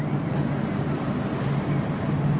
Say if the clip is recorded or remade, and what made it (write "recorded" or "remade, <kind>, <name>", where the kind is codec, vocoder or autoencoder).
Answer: recorded